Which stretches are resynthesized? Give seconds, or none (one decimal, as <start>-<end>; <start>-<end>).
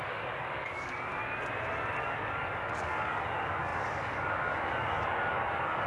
0.0-1.1; 2.0-5.9